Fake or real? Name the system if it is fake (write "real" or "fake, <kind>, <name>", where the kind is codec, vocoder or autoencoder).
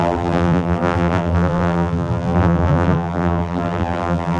fake, vocoder, BigVGAN v2